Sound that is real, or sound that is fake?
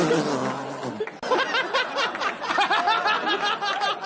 real